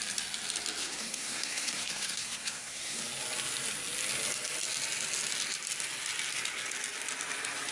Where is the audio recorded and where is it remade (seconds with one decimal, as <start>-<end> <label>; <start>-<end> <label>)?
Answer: 0.0-0.8 recorded; 0.8-3.0 remade; 3.0-7.7 recorded